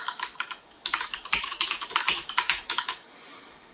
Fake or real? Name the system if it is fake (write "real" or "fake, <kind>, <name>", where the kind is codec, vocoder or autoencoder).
fake, autoencoder, DAC-VAE